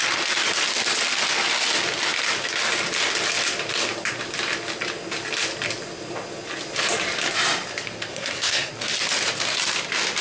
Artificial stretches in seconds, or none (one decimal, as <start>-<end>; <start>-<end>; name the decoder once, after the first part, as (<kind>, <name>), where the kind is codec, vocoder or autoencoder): 8.1-8.7 (codec, SNAC)